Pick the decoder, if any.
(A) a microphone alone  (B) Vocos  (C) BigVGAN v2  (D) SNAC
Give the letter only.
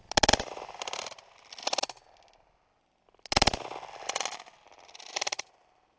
A